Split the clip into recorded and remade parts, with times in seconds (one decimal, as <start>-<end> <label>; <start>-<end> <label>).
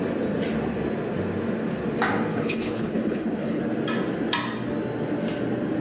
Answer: 0.0-2.3 recorded; 2.3-3.6 remade; 3.6-5.8 recorded